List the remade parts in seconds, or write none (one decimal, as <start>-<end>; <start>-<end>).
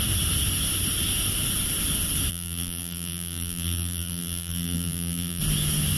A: 2.3-5.4